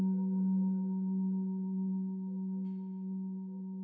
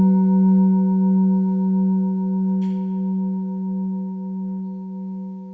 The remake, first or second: first